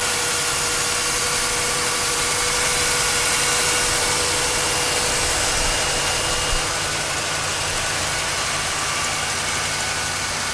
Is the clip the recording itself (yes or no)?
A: yes